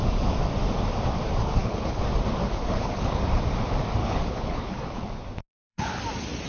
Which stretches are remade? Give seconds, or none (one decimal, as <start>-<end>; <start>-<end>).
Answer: 1.4-2.0; 2.4-3.2; 4.0-5.1; 5.5-6.0